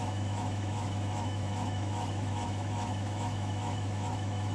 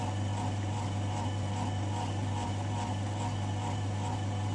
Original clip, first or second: second